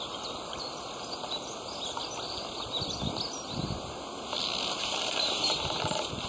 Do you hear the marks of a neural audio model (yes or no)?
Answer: no